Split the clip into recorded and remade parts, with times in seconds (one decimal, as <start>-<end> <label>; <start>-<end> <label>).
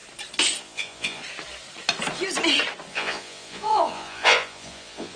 0.0-0.6 recorded; 0.6-1.2 remade; 1.2-2.9 recorded; 2.9-5.2 remade